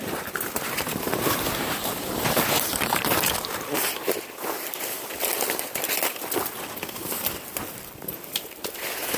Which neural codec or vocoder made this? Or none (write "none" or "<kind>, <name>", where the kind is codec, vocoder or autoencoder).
none